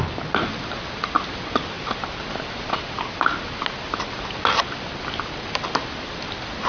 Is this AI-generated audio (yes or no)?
no